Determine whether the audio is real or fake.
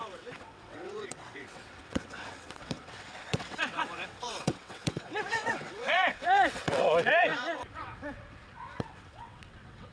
fake